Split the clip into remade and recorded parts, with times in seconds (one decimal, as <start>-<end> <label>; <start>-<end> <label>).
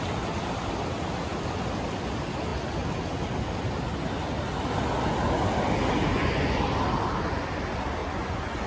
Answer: 0.0-6.1 recorded; 6.1-6.6 remade; 6.6-8.0 recorded; 8.0-8.7 remade